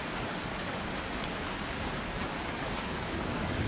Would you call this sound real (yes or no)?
no